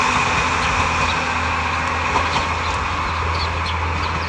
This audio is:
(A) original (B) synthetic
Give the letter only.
A